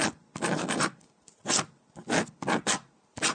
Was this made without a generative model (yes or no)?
yes